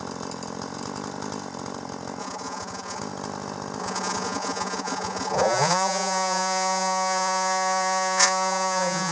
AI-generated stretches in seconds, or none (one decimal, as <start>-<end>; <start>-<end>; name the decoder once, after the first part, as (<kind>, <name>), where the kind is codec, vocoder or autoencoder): 2.2-3.0 (vocoder, Vocos); 3.8-9.1